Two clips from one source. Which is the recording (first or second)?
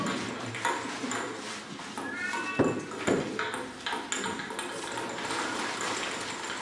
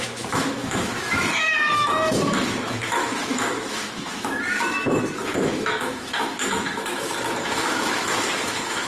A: first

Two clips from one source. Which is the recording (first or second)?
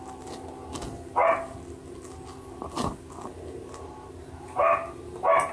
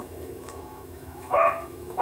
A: first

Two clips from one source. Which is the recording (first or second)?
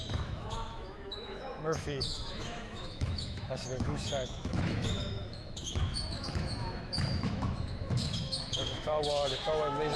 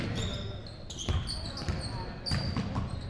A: second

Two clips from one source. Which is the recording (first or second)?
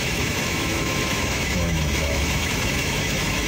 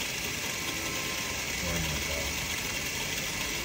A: second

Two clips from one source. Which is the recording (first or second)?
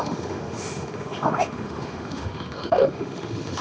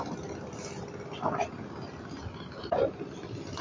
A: second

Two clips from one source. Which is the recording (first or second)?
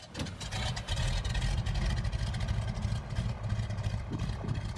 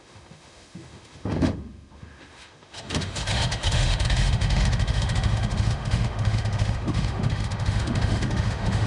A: first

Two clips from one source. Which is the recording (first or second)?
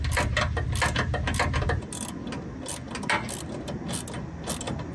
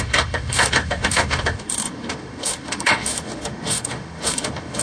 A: first